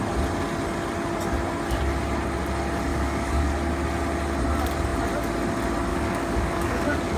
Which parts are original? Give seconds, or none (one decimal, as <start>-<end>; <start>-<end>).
0.0-2.9; 3.5-5.9